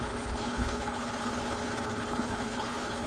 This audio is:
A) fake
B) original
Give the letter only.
A